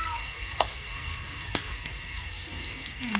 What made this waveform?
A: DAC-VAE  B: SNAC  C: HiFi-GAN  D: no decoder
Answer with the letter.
B